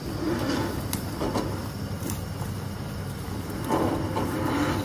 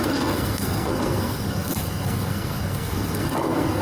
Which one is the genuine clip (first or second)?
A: first